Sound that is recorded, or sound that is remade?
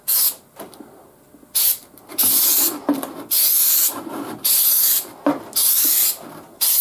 recorded